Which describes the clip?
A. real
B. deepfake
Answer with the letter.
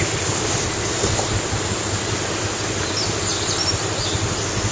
A